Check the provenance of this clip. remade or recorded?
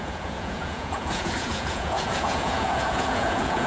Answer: remade